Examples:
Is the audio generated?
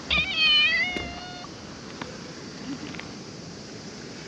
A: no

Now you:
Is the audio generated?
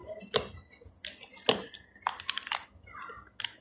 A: no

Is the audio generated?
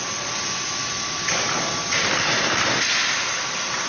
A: no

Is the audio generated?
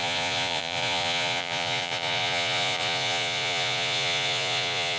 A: yes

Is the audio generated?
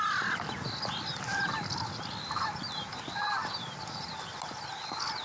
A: no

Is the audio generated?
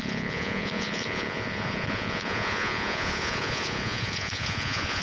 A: yes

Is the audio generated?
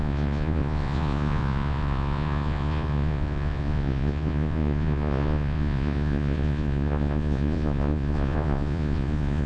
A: yes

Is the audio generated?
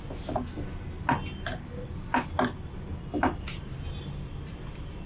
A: no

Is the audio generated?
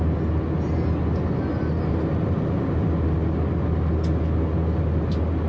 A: no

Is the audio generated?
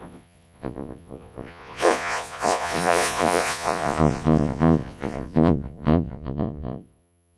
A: yes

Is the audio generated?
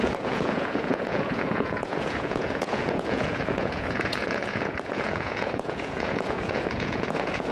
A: yes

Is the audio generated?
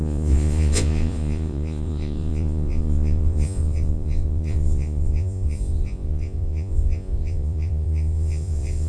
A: yes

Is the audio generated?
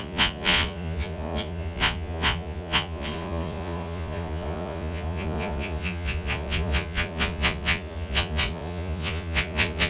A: yes